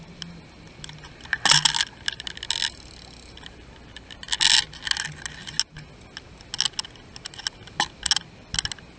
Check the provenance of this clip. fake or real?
real